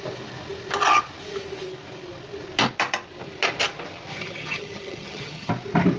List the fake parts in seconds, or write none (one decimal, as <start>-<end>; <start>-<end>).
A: 4.1-5.5